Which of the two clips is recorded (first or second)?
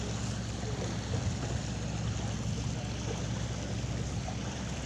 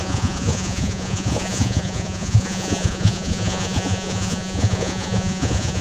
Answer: first